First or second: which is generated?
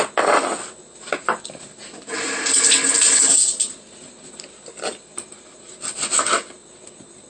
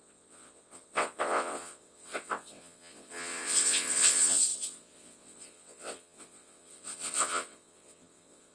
second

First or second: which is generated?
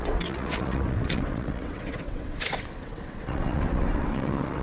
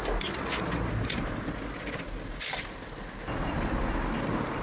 first